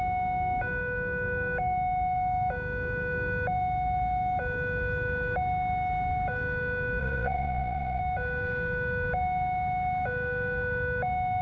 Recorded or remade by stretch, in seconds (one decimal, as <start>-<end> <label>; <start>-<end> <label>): 0.0-7.0 recorded; 7.0-8.0 remade; 8.0-11.4 recorded